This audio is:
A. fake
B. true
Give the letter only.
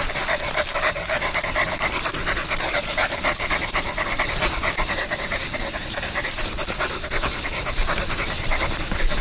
A